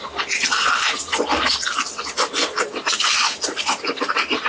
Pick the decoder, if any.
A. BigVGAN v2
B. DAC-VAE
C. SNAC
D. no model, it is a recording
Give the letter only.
A